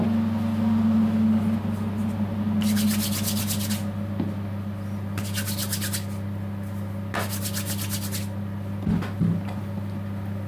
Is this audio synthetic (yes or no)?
no